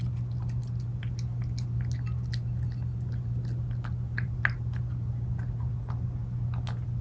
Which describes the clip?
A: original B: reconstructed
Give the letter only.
A